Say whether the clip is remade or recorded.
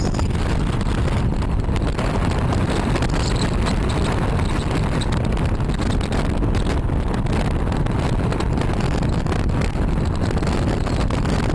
recorded